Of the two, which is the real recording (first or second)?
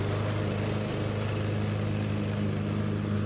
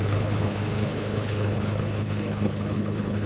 first